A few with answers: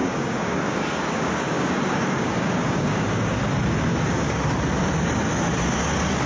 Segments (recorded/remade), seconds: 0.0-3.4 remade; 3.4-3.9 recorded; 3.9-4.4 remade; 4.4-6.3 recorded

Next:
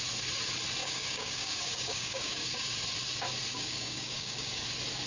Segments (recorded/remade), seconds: 0.0-0.8 recorded; 0.8-2.7 remade; 2.7-3.5 recorded; 3.5-4.6 remade; 4.6-5.1 recorded

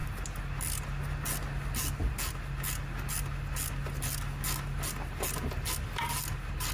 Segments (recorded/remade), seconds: 0.0-6.7 recorded

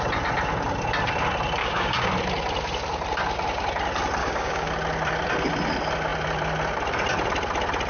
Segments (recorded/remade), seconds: 0.0-1.6 recorded; 1.6-2.1 remade; 2.1-4.2 recorded; 4.2-4.7 remade; 4.7-7.9 recorded

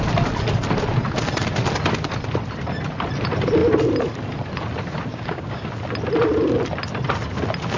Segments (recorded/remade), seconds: 0.0-5.1 recorded; 5.1-5.7 remade; 5.7-7.8 recorded

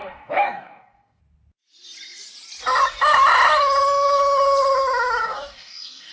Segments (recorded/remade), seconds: 0.0-1.2 remade; 1.2-5.2 recorded; 5.2-6.1 remade